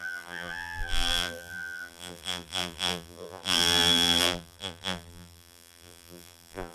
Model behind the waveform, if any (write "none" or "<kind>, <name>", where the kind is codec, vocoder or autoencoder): vocoder, BigVGAN v2